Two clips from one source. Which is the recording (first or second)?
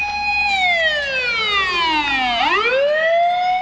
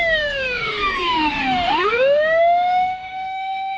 first